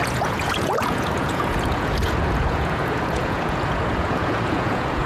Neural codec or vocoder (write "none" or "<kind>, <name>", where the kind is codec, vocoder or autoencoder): vocoder, Vocos